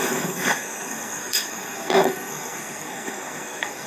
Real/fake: fake